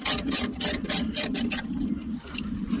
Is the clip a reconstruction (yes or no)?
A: no